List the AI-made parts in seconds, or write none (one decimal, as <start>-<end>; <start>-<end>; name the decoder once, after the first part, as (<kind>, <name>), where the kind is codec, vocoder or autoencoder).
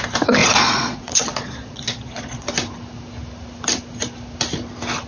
0.4-2.5 (vocoder, Vocos)